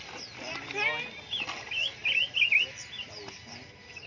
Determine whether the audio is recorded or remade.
recorded